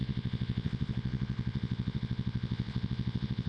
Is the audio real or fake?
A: fake